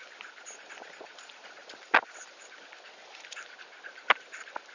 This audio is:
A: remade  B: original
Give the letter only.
B